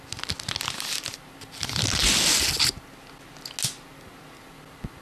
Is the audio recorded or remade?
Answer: recorded